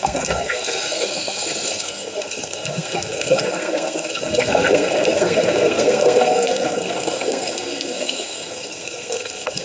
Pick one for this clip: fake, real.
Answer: fake